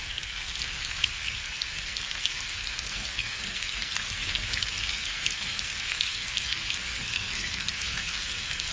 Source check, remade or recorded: remade